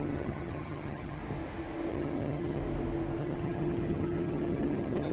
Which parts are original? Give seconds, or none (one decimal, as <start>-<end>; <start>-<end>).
1.2-1.9; 2.6-3.2